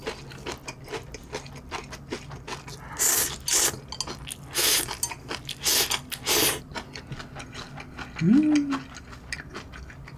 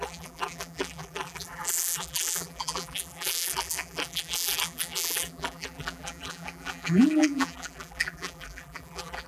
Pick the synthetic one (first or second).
second